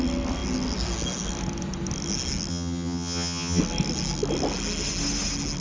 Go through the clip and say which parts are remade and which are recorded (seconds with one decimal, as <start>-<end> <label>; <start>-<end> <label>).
0.0-2.5 recorded; 2.5-3.6 remade; 3.6-5.6 recorded